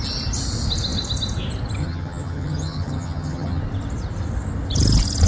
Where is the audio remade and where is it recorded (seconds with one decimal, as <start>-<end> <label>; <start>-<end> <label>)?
0.0-1.8 recorded; 1.8-3.6 remade; 3.6-5.3 recorded

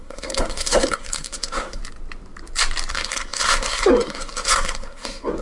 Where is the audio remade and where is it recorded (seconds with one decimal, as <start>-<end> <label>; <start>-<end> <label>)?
0.0-1.8 remade; 1.8-2.9 recorded; 2.9-5.4 remade

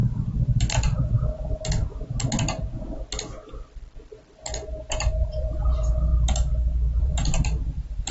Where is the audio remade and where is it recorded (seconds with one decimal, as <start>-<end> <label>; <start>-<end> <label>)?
0.0-4.9 recorded; 4.9-6.1 remade; 6.1-7.0 recorded; 7.0-8.1 remade

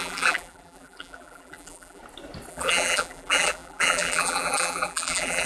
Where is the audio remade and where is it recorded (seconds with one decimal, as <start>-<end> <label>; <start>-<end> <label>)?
0.0-2.0 remade; 2.0-2.5 recorded; 2.5-5.5 remade

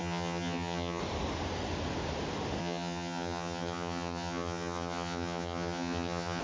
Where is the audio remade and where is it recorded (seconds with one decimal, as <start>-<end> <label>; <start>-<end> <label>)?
0.0-1.0 remade; 1.0-2.6 recorded; 2.6-6.4 remade

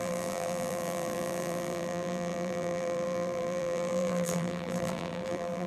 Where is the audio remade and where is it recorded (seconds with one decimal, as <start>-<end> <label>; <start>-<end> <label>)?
0.0-5.7 remade

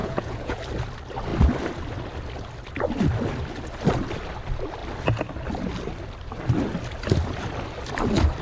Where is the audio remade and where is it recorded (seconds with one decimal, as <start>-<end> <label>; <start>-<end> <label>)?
0.0-0.6 remade; 0.6-8.4 recorded